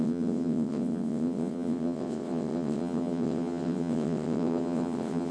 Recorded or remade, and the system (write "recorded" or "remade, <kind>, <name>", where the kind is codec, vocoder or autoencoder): remade, vocoder, WaveNeXt